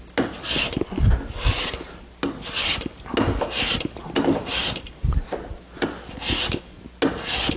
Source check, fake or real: real